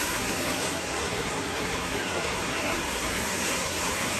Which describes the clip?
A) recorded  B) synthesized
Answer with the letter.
B